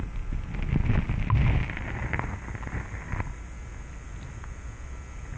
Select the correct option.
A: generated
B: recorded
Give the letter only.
B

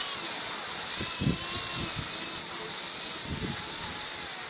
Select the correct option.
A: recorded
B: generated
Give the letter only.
A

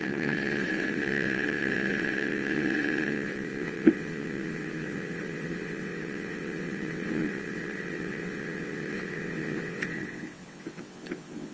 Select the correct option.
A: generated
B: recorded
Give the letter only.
A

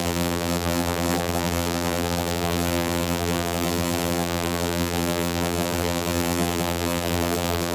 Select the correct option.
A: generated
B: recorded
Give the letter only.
A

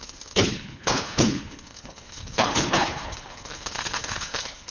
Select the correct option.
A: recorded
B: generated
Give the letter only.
B